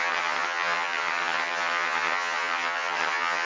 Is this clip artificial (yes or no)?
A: yes